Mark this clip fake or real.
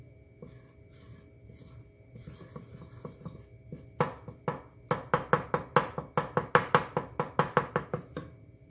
real